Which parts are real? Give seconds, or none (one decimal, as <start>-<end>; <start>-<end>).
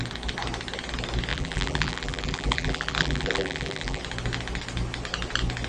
0.0-1.3; 4.0-5.7